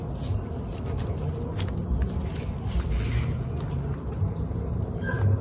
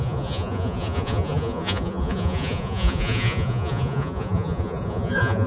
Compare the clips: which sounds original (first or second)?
first